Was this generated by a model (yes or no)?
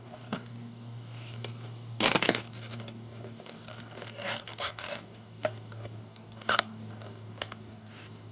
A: yes